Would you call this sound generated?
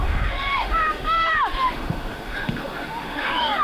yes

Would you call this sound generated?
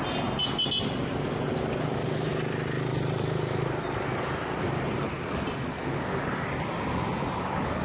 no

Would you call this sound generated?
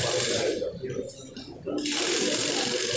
no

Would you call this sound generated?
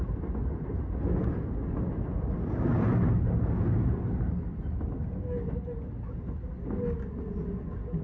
no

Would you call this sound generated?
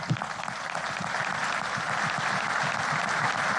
no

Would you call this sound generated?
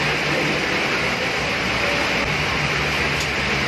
no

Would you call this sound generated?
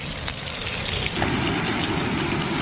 no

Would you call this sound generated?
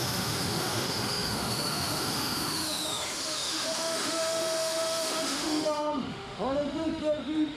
yes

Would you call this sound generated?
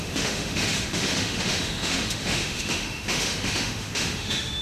yes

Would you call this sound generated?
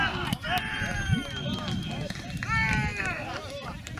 no